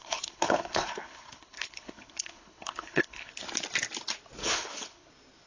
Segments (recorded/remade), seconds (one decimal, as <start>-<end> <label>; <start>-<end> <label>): 0.0-3.3 remade; 3.3-4.4 recorded; 4.4-5.1 remade; 5.1-5.5 recorded